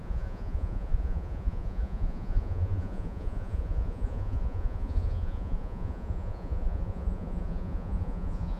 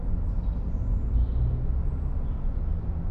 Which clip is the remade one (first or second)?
first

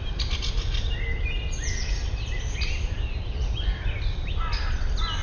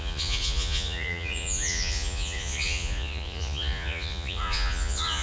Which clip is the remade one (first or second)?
second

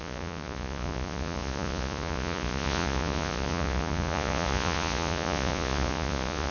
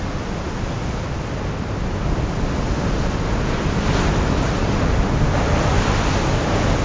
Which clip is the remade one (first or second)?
first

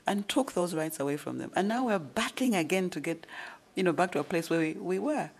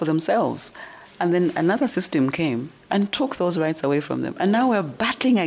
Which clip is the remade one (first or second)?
first